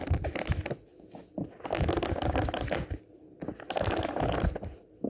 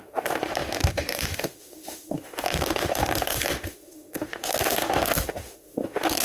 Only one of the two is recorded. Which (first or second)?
first